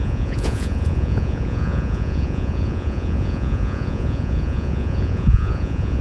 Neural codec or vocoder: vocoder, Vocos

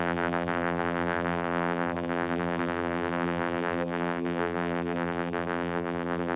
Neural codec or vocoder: vocoder, BigVGAN v2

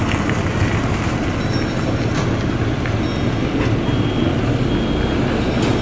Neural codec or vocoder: none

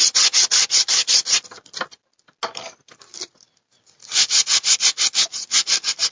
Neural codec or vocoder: none